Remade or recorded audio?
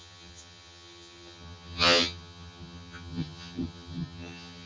remade